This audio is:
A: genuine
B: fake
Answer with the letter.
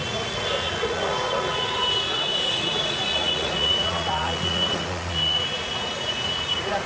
B